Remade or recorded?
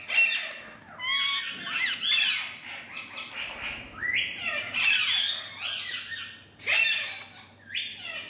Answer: recorded